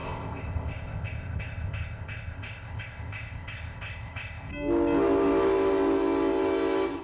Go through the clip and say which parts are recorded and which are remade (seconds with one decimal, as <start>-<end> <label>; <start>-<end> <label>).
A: 0.0-4.5 remade; 4.5-7.0 recorded

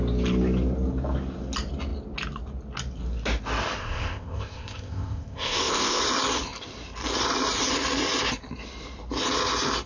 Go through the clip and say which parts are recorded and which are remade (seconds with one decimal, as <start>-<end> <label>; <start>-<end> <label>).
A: 0.0-3.8 recorded; 3.8-6.0 remade; 6.0-9.9 recorded

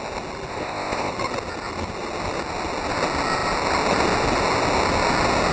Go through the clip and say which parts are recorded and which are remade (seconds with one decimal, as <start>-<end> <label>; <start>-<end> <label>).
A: 0.0-0.5 recorded; 0.5-1.1 remade; 1.1-5.5 recorded

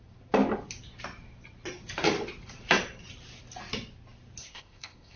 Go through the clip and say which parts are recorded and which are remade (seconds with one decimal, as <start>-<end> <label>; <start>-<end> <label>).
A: 0.0-4.4 recorded; 4.4-5.2 remade

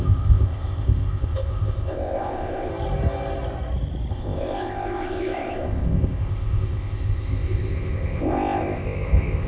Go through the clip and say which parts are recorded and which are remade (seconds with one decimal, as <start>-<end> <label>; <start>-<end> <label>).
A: 0.0-2.7 remade; 2.7-4.1 recorded; 4.1-9.5 remade

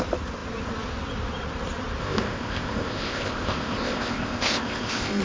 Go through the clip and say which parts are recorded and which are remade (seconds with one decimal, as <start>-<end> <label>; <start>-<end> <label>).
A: 0.0-2.0 recorded; 2.0-5.2 remade